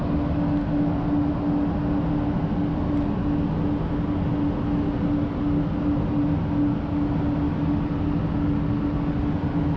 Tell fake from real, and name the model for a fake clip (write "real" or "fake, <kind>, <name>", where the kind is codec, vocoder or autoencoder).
real